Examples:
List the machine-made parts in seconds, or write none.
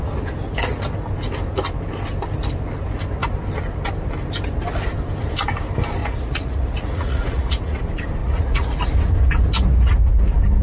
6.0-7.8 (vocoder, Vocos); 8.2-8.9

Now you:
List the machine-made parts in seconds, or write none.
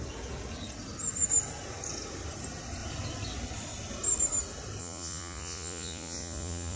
4.8-6.8 (vocoder, Vocos)